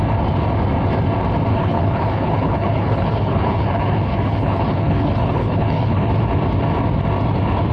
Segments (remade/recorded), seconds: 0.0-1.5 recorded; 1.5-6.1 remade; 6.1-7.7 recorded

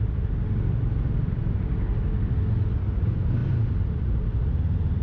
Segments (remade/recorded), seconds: 0.0-5.0 recorded

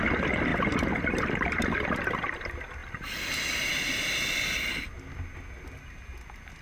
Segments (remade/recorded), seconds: 0.0-2.8 recorded; 2.8-3.4 remade; 3.4-6.6 recorded